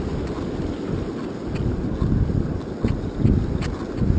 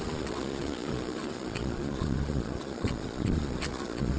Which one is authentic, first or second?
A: first